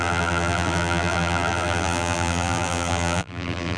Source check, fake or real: fake